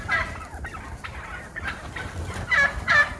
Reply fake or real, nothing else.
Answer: real